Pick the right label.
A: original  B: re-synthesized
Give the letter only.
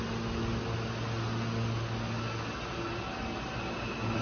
A